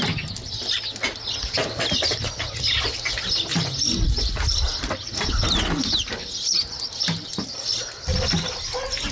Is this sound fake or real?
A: real